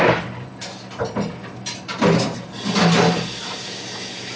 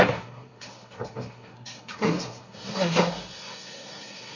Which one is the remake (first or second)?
second